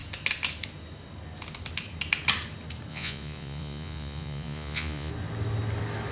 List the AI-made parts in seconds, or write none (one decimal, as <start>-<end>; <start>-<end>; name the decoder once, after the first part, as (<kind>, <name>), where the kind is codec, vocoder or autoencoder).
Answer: 2.9-5.1 (vocoder, Vocos)